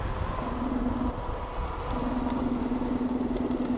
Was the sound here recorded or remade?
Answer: recorded